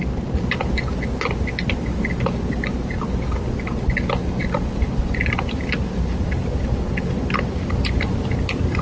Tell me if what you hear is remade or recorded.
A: recorded